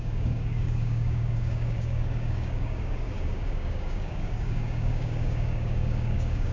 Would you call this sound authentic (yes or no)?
no